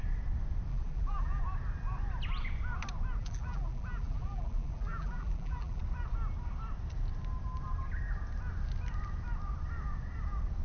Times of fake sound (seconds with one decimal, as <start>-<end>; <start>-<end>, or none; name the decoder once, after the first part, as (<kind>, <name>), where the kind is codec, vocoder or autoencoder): 0.7-1.4 (vocoder, BigVGAN v2); 3.2-5.8